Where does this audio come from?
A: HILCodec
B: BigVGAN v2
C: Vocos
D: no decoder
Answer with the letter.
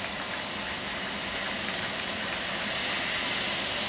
D